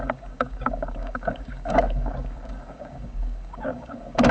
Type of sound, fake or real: fake